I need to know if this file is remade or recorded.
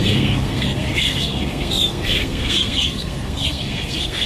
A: remade